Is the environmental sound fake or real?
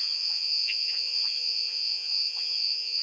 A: fake